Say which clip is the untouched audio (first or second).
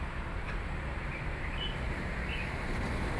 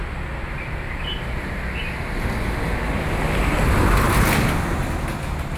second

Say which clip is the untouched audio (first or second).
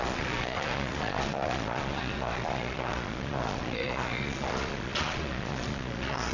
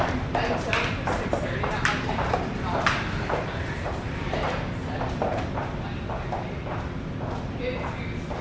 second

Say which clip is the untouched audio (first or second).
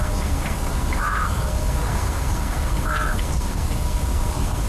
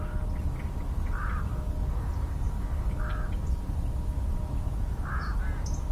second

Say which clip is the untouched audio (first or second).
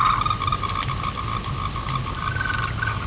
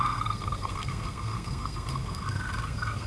first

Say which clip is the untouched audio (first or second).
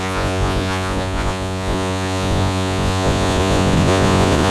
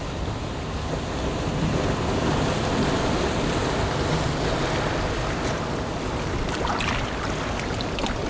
second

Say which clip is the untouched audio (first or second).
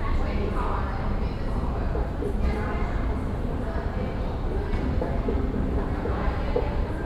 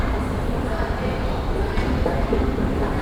first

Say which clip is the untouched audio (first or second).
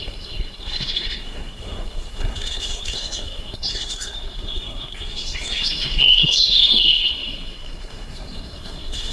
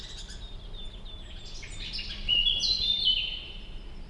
second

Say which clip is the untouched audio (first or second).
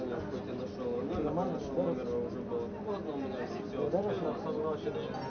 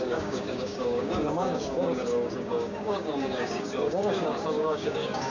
first